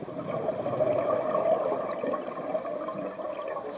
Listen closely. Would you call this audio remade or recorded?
recorded